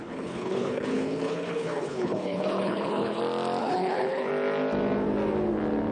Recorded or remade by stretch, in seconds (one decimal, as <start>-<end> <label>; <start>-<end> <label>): 0.0-3.2 remade; 3.2-3.6 recorded; 3.6-4.3 remade; 4.3-5.9 recorded